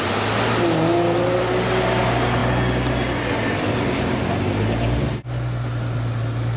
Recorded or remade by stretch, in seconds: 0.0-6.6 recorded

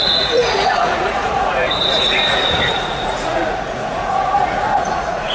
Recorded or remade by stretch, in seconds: 0.0-5.3 remade

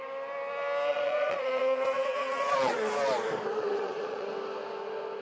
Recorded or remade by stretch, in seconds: 0.0-0.9 recorded; 0.9-2.9 remade; 2.9-3.6 recorded; 3.6-4.3 remade; 4.3-5.2 recorded

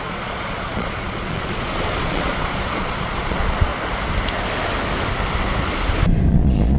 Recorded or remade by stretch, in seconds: 0.0-3.7 remade; 3.7-6.3 recorded; 6.3-6.8 remade